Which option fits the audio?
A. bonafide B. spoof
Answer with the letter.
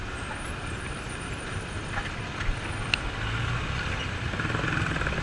A